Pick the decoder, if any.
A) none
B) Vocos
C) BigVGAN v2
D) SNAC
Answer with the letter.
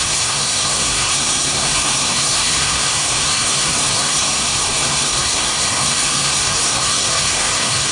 D